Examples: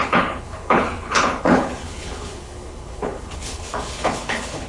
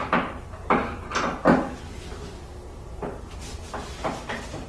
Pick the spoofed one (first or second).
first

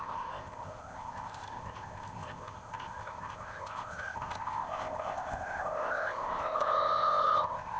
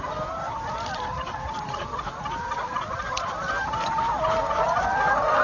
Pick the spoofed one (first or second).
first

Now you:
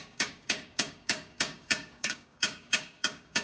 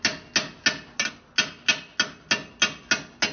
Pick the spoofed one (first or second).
first